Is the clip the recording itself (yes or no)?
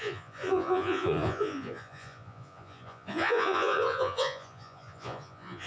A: no